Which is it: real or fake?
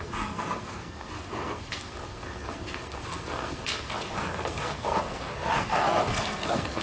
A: fake